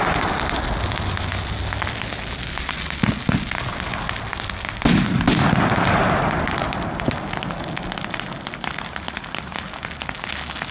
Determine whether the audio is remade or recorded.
recorded